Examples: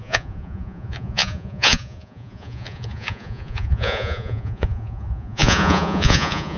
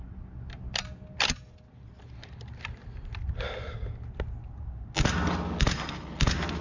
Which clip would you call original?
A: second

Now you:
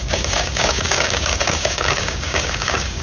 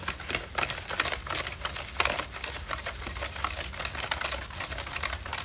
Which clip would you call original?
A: second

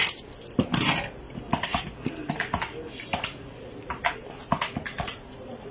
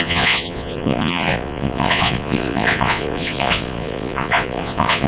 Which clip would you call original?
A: first